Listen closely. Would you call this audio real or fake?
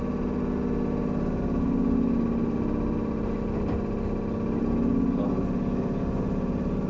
real